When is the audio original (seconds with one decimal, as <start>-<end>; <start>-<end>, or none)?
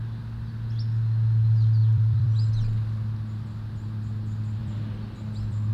0.0-1.8; 2.5-4.6